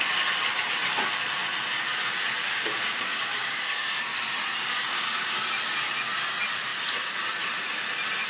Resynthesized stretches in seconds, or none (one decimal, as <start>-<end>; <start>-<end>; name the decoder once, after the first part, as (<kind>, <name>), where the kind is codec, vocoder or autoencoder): 2.4-4.0 (codec, DAC); 4.6-5.3